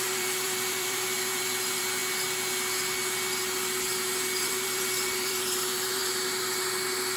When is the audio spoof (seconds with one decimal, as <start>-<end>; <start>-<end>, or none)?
0.0-2.0; 4.4-6.0